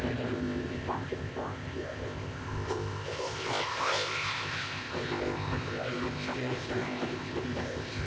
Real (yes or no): no